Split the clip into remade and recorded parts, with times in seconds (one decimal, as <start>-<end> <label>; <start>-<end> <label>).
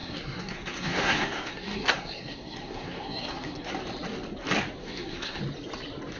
0.0-3.7 remade; 3.7-4.8 recorded; 4.8-5.4 remade; 5.4-6.2 recorded